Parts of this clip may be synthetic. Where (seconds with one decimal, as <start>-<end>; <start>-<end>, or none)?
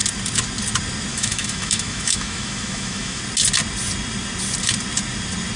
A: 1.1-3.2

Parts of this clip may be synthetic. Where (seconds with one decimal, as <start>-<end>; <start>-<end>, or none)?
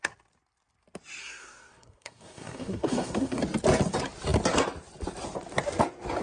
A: 1.2-3.4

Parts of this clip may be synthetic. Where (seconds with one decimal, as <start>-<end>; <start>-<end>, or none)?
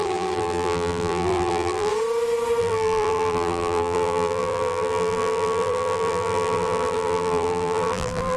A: 0.0-1.9; 2.6-8.4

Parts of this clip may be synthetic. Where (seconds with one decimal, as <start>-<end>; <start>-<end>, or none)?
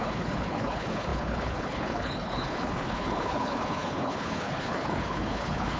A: 0.0-5.8